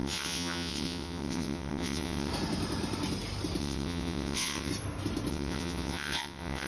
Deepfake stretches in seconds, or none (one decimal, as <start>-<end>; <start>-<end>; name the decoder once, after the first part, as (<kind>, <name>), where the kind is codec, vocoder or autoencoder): 0.0-2.3 (vocoder, WaveNeXt); 3.6-4.7; 5.3-6.7